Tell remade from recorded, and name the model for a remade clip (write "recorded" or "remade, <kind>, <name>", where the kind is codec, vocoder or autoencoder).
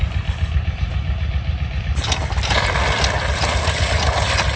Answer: recorded